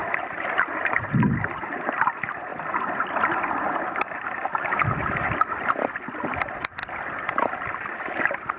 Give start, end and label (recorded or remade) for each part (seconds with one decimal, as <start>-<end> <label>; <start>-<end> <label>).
0.0-2.5 recorded; 2.5-3.2 remade; 3.2-6.8 recorded; 6.8-8.2 remade; 8.2-8.6 recorded